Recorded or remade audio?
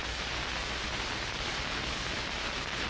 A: recorded